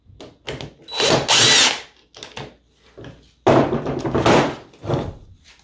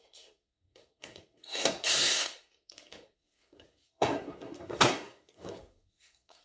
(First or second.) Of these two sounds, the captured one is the first